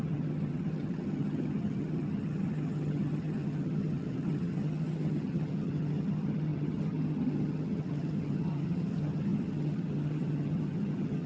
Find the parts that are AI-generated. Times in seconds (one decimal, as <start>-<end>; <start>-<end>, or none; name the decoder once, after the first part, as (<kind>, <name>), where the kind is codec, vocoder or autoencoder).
0.0-11.3 (vocoder, HiFi-GAN)